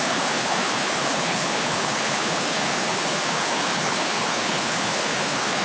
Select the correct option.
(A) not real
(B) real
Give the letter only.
A